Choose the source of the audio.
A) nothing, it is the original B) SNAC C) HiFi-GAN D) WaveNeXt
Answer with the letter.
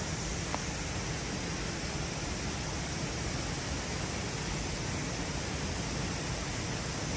A